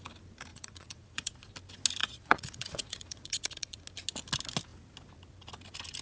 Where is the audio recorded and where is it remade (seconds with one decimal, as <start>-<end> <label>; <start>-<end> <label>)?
0.0-0.5 recorded; 0.5-1.5 remade; 1.5-2.0 recorded; 2.0-3.8 remade; 3.8-6.0 recorded